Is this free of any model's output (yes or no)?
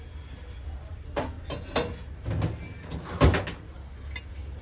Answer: yes